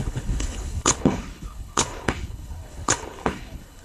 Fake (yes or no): yes